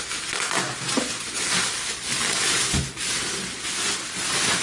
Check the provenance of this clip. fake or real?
real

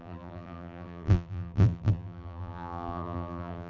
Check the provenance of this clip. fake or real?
fake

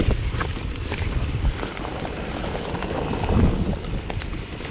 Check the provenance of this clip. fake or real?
fake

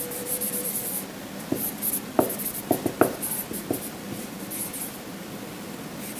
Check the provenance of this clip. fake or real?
fake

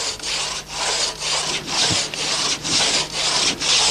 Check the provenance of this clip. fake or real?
real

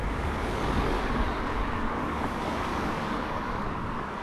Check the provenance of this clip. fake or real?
fake